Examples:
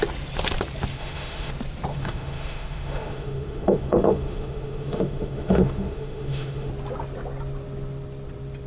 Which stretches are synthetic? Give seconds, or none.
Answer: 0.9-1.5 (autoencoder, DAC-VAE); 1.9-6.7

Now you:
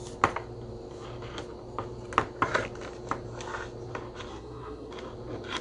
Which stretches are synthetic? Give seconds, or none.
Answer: 4.3-4.9 (codec, SNAC)

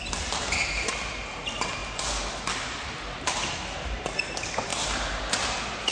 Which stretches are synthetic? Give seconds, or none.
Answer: none

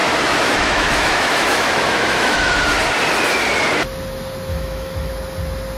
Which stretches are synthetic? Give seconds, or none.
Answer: 0.0-2.6 (autoencoder, DAC-VAE); 4.5-5.1